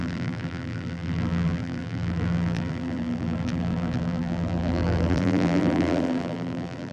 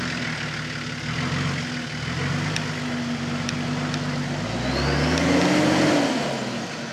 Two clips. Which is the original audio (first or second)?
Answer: second